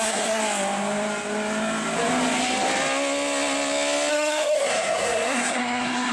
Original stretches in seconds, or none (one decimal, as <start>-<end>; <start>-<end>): 0.4-4.1